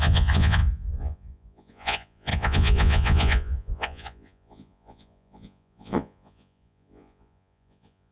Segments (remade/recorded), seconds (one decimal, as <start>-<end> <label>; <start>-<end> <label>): 0.0-8.1 remade